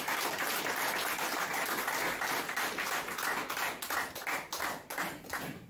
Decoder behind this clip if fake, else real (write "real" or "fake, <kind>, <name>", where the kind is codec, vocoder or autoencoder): real